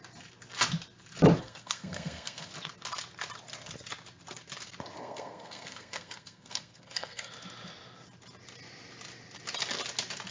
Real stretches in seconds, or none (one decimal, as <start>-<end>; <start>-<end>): 0.0-1.4; 2.5-5.0; 7.3-10.3